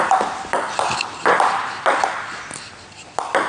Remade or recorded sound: recorded